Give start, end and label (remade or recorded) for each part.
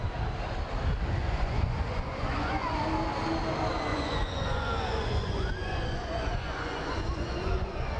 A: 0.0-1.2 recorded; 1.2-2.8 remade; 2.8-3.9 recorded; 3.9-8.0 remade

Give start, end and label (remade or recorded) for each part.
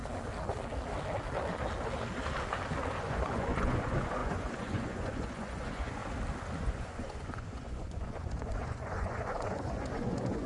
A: 0.0-3.0 recorded; 3.0-6.0 remade; 6.0-6.6 recorded; 6.6-10.5 remade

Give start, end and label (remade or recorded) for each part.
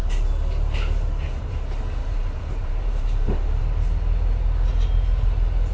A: 0.0-2.0 recorded; 2.0-3.6 remade; 3.6-5.7 recorded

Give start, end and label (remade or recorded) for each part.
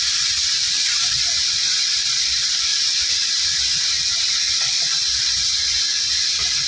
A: 0.0-2.7 remade; 2.7-4.2 recorded; 4.2-5.9 remade; 5.9-6.7 recorded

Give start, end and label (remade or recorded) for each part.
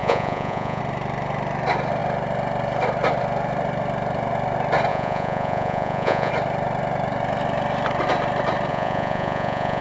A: 0.0-0.8 remade; 0.8-4.9 recorded; 4.9-6.3 remade; 6.3-8.7 recorded; 8.7-9.8 remade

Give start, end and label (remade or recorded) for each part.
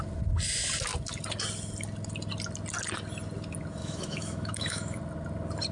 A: 0.0-3.8 recorded; 3.8-5.0 remade; 5.0-5.7 recorded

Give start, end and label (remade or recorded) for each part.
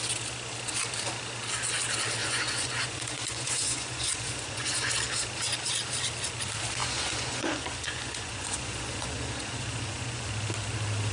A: 0.0-2.2 recorded; 2.2-4.9 remade; 4.9-6.8 recorded; 6.8-10.3 remade; 10.3-11.1 recorded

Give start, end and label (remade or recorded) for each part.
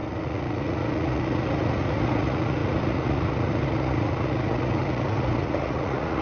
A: 0.0-6.2 remade